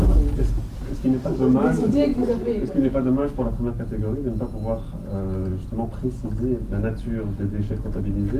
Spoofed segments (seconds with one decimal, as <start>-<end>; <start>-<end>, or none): 1.2-3.7